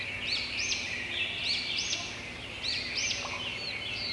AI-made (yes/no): no